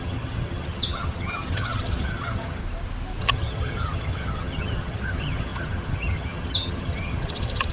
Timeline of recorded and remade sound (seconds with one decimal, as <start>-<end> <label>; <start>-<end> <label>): 0.0-2.6 remade; 2.6-3.2 recorded; 3.2-7.7 remade